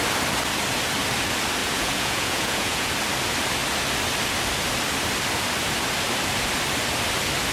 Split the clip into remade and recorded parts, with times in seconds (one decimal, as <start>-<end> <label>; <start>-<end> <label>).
0.0-1.6 recorded; 1.6-2.9 remade; 2.9-7.5 recorded